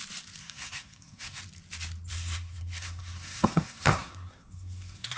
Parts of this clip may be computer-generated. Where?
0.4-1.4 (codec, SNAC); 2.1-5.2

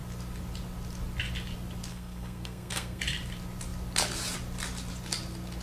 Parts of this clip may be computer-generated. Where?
1.9-3.0 (codec, SNAC)

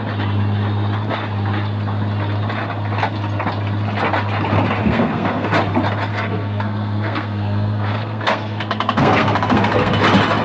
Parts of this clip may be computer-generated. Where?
4.8-5.5 (codec, SNAC); 6.1-10.0

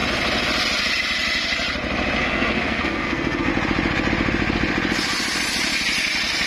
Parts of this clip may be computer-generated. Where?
2.2-3.5 (codec, SNAC)

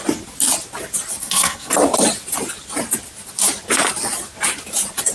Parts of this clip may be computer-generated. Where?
1.2-1.7 (codec, SNAC)

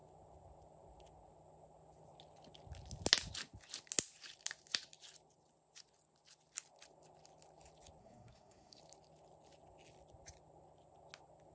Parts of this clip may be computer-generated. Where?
8.0-8.8 (codec, SNAC)